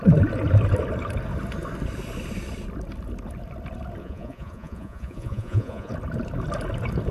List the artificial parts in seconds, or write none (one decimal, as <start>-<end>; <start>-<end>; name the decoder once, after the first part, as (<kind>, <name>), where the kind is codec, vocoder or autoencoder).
4.0-5.9 (vocoder, Vocos)